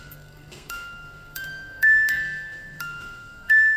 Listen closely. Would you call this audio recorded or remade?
remade